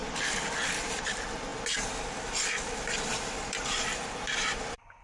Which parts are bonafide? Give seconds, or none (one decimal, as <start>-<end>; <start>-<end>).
1.5-2.8

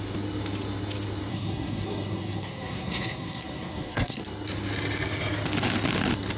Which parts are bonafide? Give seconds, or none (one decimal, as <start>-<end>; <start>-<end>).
0.0-1.3; 4.2-6.4

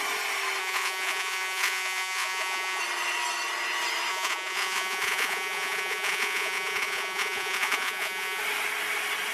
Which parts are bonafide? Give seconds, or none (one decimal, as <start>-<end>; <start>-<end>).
0.0-0.6; 2.8-4.1; 8.4-9.3

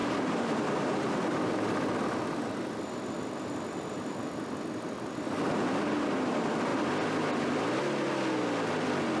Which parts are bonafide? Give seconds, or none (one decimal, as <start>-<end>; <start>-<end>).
0.0-9.2

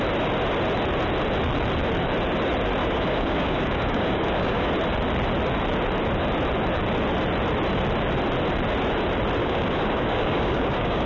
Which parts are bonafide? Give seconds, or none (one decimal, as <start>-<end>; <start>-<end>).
0.0-2.8; 4.7-9.4

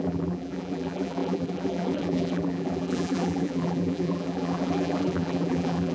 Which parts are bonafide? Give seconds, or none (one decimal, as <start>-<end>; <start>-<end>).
none